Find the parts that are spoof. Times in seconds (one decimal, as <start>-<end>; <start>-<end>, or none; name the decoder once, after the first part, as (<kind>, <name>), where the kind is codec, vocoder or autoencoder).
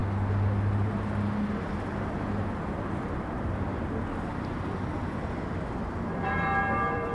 4.3-7.1 (vocoder, BigVGAN v2)